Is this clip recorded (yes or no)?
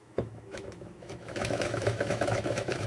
no